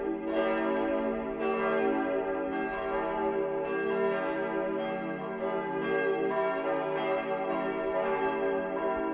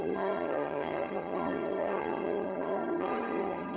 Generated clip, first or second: second